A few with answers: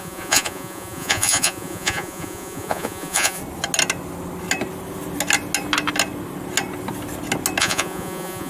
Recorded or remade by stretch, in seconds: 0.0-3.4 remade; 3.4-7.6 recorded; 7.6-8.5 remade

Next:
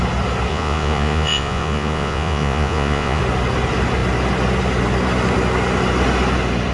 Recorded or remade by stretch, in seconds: 0.0-0.5 recorded; 0.5-3.2 remade; 3.2-6.7 recorded